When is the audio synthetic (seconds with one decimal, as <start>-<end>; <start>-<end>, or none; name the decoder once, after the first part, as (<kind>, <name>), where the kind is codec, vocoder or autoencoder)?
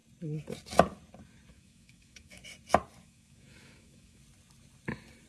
1.5-2.4 (autoencoder, DAC-VAE); 3.0-4.2